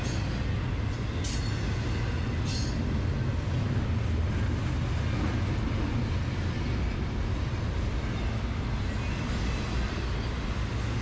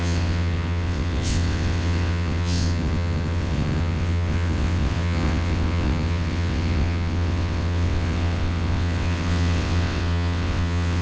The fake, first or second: second